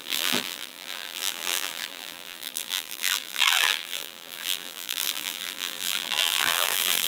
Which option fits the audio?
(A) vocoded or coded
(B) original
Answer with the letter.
A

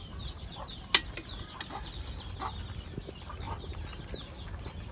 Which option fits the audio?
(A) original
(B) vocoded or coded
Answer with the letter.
A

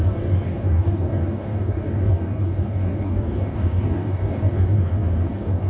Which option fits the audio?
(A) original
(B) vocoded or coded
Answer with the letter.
B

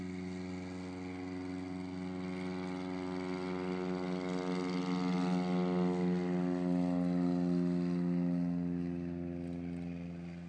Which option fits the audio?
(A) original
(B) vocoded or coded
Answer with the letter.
A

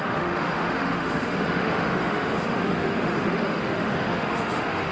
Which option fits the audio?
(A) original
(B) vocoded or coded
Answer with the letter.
B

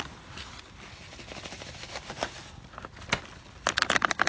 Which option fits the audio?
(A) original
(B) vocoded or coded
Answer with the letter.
A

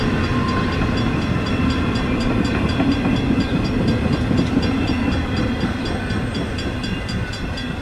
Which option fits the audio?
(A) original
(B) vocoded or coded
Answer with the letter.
B